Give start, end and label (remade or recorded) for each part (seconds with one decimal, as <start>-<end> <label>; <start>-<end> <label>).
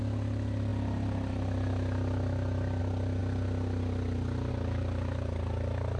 0.0-6.0 recorded